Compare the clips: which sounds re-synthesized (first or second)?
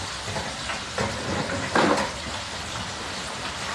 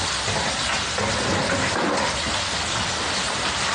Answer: first